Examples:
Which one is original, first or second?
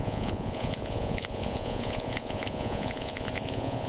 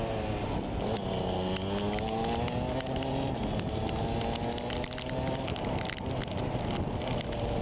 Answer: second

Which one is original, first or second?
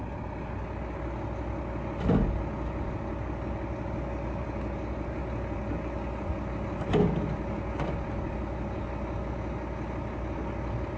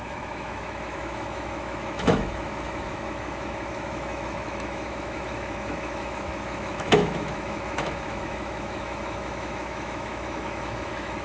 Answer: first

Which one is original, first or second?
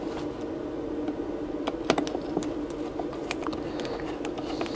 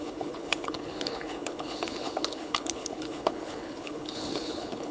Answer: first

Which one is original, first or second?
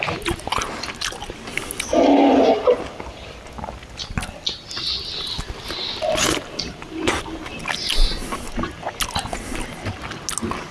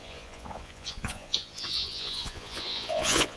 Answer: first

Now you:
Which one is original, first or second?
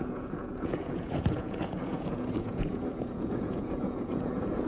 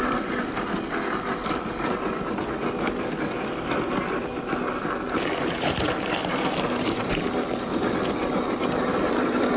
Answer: second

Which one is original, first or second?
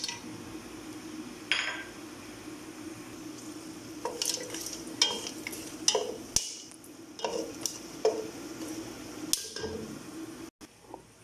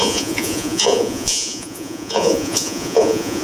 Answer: first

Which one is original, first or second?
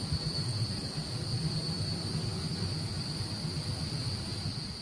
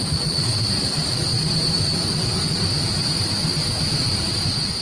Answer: first